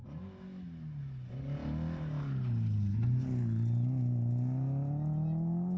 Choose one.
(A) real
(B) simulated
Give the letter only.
A